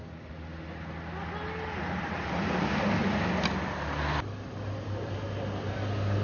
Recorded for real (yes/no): yes